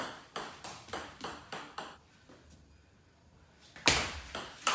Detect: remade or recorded recorded